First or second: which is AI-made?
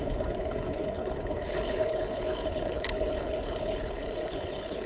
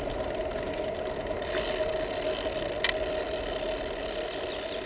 first